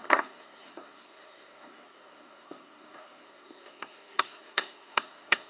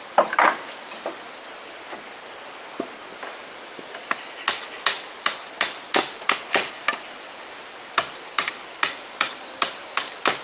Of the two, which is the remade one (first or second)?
first